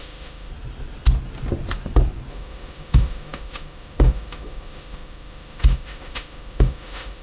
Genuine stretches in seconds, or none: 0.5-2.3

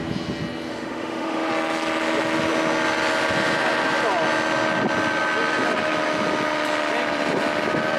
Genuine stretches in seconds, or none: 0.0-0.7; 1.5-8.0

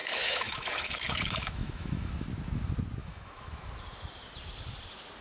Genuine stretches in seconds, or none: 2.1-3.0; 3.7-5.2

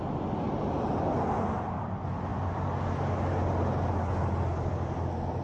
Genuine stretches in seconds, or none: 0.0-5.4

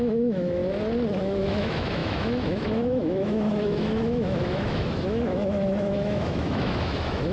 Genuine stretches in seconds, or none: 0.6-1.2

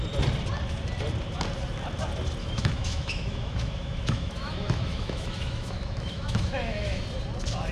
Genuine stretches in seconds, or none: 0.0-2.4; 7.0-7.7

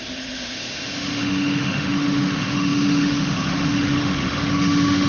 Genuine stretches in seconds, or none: none